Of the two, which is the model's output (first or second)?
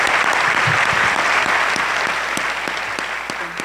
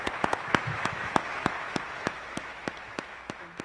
second